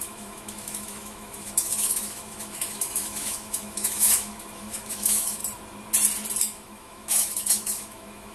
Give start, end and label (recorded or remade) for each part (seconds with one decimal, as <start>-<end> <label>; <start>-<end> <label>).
0.0-5.4 remade; 5.4-6.4 recorded; 6.4-8.3 remade